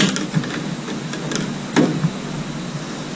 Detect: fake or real real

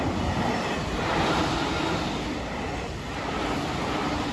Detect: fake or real real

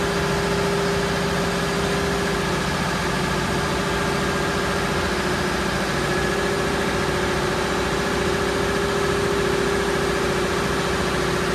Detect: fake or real real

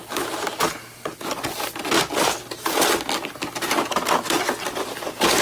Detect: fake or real real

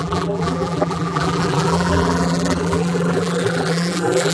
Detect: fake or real fake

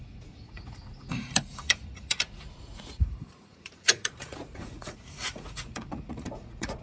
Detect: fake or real fake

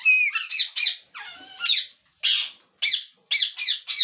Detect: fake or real real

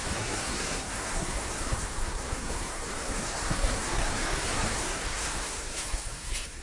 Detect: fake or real fake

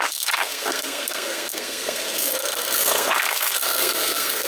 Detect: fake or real fake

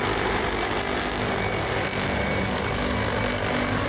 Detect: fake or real real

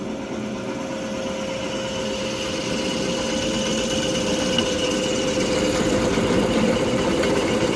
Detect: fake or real real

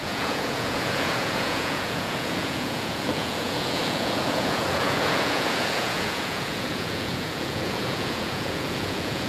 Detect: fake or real fake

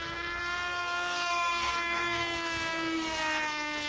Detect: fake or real fake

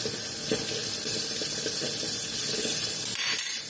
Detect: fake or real real